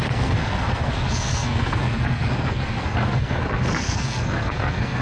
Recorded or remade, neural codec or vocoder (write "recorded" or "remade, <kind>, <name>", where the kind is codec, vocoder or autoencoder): remade, codec, SNAC